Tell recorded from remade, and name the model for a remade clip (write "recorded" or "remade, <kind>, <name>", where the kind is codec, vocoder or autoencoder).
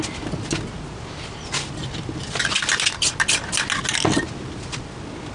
recorded